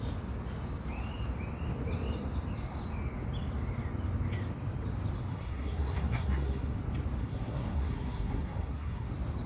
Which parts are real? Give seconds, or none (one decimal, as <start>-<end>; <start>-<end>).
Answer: 0.0-5.3; 6.8-7.2; 9.1-9.5